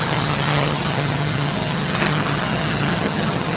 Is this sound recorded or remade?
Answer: remade